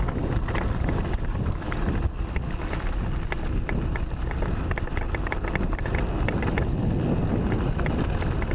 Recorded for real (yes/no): yes